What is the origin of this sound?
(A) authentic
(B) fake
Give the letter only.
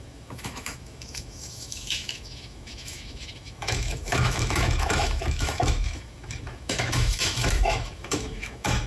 B